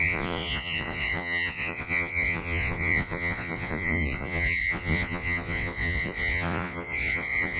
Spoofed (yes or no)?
yes